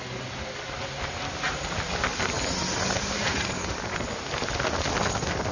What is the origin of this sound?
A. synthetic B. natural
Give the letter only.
B